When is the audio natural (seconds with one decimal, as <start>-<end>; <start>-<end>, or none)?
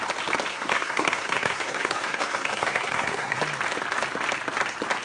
0.0-0.5; 3.4-5.0